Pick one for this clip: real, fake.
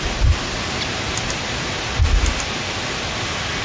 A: real